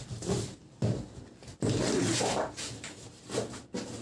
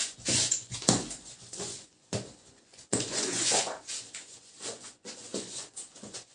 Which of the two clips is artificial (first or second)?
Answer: second